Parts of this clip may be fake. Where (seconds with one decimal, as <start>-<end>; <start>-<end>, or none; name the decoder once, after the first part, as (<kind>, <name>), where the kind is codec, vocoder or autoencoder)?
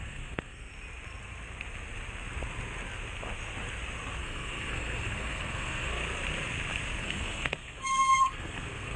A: 0.0-0.7 (codec, SNAC); 4.2-6.0; 7.0-9.0